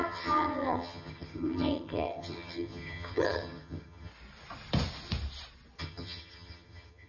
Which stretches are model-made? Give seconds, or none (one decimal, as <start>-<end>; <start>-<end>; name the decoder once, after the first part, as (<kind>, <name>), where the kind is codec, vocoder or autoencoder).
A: 0.0-4.1 (vocoder, HiFi-GAN); 5.8-7.1